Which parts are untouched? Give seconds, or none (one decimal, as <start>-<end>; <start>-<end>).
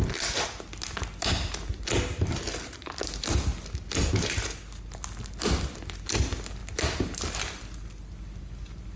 0.0-9.0